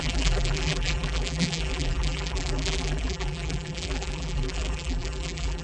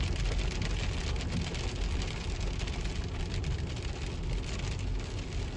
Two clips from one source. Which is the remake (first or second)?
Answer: first